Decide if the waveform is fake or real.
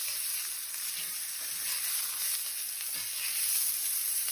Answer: real